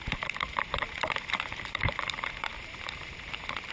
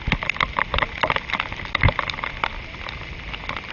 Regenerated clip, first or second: first